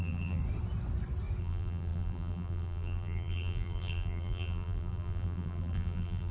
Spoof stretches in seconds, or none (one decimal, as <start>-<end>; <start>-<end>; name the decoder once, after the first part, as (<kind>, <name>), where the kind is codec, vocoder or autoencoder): 0.0-0.4 (vocoder, BigVGAN v2); 1.4-6.3